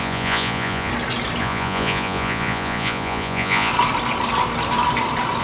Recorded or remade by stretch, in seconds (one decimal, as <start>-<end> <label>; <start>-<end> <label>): 0.0-0.9 remade; 0.9-1.4 recorded; 1.4-3.7 remade; 3.7-5.4 recorded